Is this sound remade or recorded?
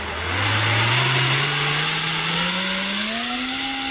recorded